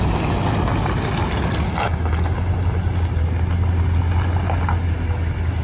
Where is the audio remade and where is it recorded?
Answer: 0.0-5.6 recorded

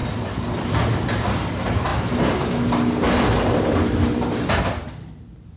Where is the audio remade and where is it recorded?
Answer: 0.0-5.6 recorded

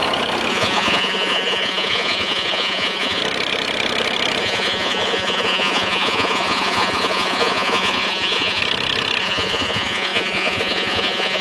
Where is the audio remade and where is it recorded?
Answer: 0.0-0.5 recorded; 0.5-3.2 remade; 3.2-4.4 recorded; 4.4-8.6 remade; 8.6-9.2 recorded; 9.2-11.4 remade

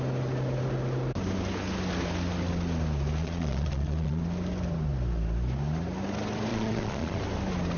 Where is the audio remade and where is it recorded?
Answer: 0.0-3.2 recorded; 3.2-4.2 remade; 4.2-6.5 recorded; 6.5-7.2 remade; 7.2-7.8 recorded

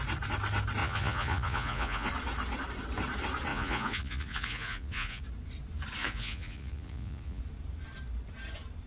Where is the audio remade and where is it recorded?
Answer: 0.0-0.8 recorded; 0.8-2.1 remade; 2.1-3.5 recorded; 3.5-5.2 remade; 5.2-6.0 recorded; 6.0-7.4 remade; 7.4-8.9 recorded